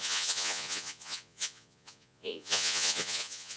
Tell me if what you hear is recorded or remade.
remade